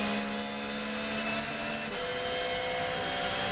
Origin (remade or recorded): recorded